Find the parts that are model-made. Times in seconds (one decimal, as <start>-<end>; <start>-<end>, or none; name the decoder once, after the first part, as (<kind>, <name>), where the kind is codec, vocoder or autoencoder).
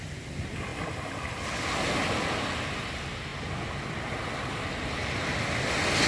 none